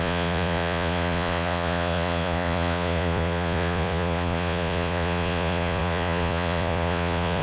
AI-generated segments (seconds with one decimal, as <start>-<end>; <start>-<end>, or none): 0.0-7.4